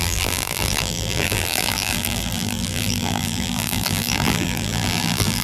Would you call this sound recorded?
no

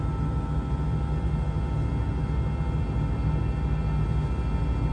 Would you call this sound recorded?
yes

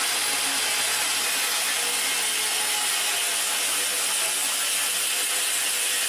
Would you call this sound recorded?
yes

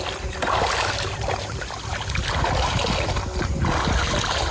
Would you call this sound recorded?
yes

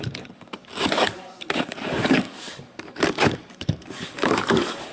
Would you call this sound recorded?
no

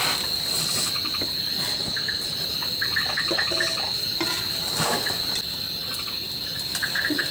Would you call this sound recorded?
yes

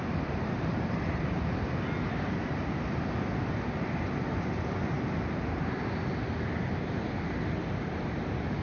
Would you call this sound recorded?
yes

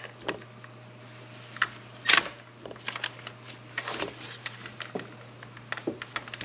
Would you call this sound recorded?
yes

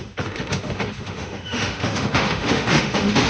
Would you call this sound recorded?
no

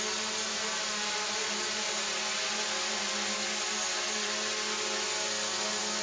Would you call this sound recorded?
yes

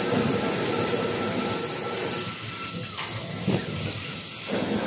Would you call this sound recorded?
yes